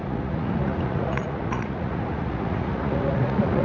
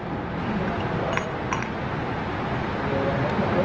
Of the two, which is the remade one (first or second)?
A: first